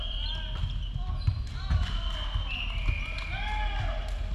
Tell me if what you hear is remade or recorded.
recorded